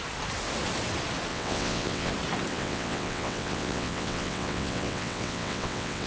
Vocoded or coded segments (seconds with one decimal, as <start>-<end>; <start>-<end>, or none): 1.3-2.1; 2.5-6.1

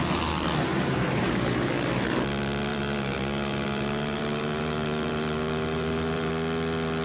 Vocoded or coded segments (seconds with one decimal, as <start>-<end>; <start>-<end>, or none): 0.7-1.7; 2.7-6.3

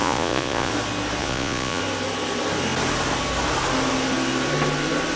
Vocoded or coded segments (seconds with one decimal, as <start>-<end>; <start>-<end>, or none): 0.0-0.7; 1.2-1.8

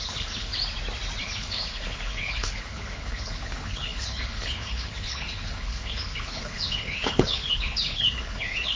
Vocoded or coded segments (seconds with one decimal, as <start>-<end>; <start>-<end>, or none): 0.0-0.5; 1.2-8.8

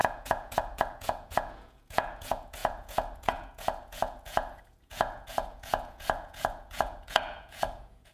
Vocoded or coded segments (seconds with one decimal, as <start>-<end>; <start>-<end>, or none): 0.0-8.1

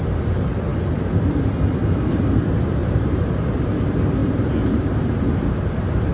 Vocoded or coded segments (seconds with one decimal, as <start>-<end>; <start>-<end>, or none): 2.8-3.5; 4.2-6.1

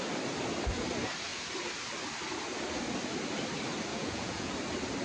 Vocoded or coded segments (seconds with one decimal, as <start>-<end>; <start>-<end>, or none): 3.9-4.5